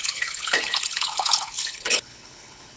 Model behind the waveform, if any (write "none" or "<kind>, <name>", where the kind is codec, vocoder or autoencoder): codec, HILCodec